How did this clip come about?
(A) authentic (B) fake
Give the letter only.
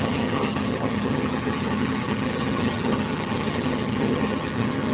B